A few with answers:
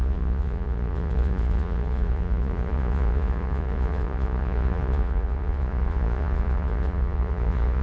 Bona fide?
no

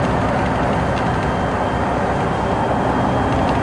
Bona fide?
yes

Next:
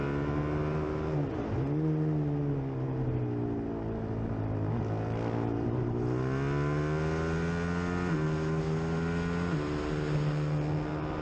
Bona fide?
yes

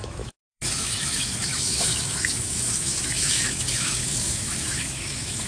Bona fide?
no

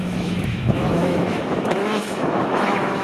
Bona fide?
no